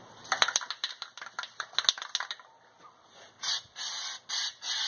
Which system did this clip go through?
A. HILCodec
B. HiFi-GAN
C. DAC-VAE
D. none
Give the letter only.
D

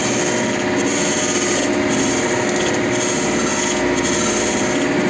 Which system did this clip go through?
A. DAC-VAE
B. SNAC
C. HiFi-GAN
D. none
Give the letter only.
D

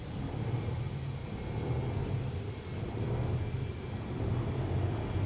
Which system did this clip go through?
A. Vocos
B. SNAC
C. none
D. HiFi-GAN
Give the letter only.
C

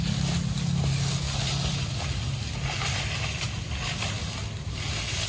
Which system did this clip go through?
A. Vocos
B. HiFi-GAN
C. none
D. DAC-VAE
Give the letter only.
C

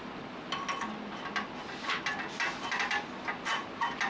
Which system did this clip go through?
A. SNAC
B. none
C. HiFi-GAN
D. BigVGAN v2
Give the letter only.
B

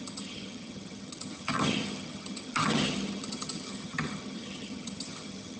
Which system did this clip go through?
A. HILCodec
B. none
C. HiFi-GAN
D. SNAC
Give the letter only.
C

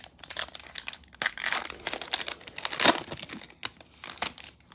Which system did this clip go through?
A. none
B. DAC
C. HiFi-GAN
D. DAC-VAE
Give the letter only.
A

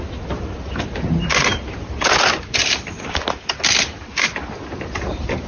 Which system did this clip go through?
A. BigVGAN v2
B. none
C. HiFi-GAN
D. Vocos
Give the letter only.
B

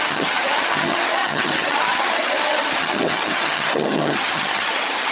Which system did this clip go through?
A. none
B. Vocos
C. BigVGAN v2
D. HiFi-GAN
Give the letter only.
D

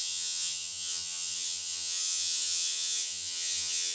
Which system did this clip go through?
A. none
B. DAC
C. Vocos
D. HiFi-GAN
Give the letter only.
D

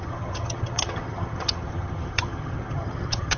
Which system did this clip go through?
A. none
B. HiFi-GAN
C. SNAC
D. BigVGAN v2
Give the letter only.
B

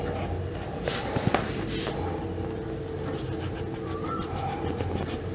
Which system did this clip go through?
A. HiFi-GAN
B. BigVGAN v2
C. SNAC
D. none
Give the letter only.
D